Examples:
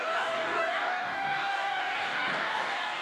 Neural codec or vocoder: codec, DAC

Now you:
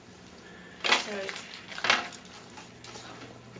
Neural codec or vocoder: none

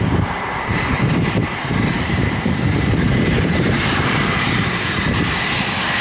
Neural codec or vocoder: vocoder, BigVGAN v2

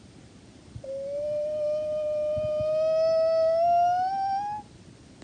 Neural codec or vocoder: none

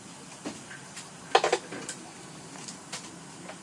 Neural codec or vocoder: none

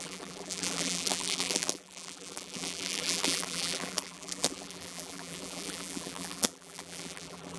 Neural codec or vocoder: vocoder, BigVGAN v2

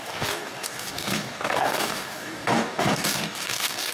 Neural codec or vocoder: codec, DAC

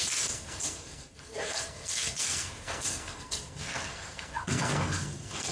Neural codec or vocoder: codec, SNAC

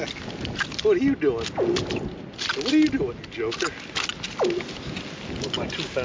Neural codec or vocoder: none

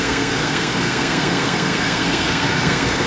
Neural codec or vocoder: codec, SNAC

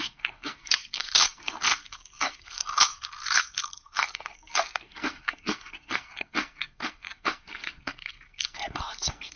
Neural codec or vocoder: codec, SNAC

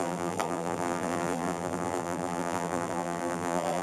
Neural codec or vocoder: vocoder, BigVGAN v2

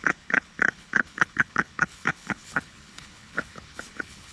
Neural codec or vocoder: codec, HILCodec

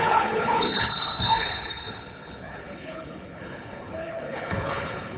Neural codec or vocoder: codec, HILCodec